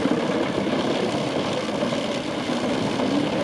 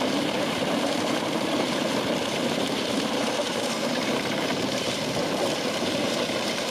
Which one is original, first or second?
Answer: first